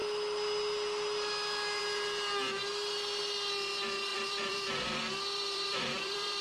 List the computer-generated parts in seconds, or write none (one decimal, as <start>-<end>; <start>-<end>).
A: 4.1-6.4